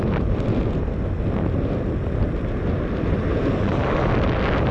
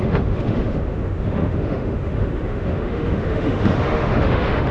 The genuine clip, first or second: first